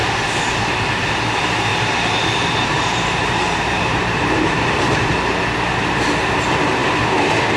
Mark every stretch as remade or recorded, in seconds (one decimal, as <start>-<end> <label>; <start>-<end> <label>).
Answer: 0.0-1.7 recorded; 1.7-5.4 remade; 5.4-7.6 recorded